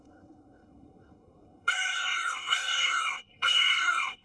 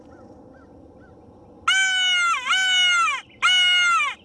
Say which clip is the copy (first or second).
first